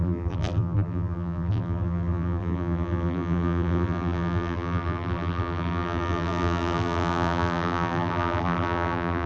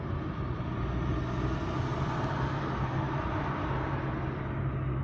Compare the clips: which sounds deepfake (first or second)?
first